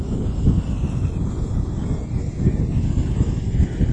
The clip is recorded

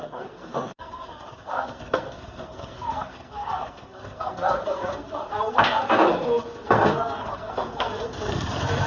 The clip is remade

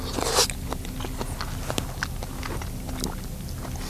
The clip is recorded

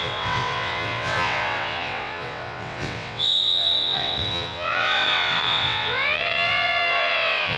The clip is remade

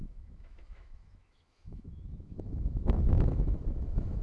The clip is remade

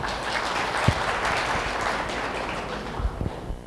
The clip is recorded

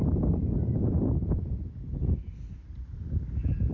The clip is recorded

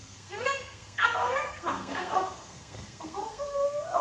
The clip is remade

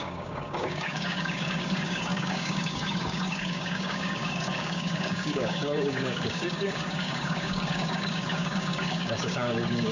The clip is remade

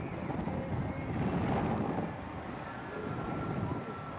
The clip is recorded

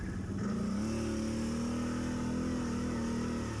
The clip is recorded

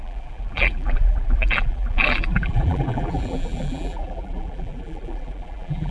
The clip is remade